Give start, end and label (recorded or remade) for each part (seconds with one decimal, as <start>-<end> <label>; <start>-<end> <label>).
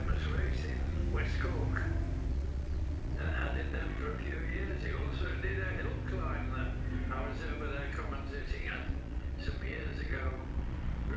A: 0.0-1.0 remade; 1.0-2.3 recorded; 2.3-5.3 remade; 5.3-8.4 recorded; 8.4-11.2 remade